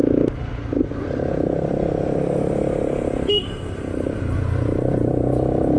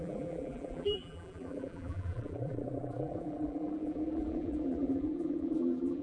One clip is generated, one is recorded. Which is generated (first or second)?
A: second